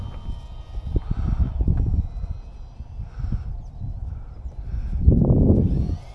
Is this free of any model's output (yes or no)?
yes